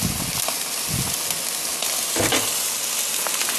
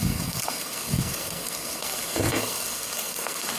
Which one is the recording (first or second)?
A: first